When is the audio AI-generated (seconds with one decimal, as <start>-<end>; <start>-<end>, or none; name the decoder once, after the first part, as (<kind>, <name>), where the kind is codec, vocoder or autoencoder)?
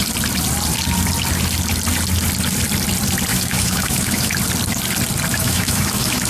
3.3-4.3 (autoencoder, DAC-VAE); 5.3-6.3